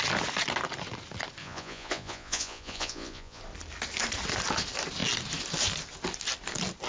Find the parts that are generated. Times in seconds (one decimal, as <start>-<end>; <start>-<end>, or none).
1.4-3.4